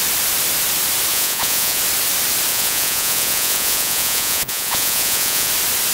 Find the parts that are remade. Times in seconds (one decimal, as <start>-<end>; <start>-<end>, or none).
1.1-1.8; 2.5-5.5